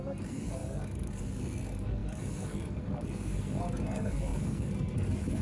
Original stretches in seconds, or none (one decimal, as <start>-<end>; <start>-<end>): none